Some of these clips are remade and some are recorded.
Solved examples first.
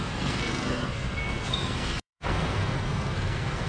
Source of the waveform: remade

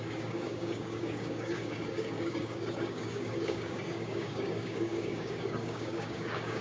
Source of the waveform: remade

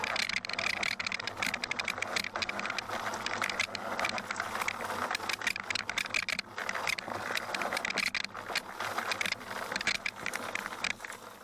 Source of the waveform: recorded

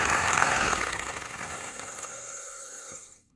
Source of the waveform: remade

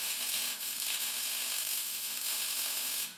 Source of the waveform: remade